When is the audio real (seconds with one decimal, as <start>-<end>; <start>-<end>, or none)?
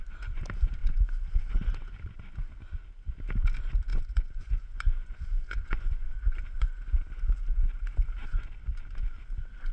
0.0-0.8; 1.5-3.9; 6.8-9.7